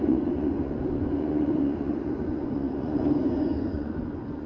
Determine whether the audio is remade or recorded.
remade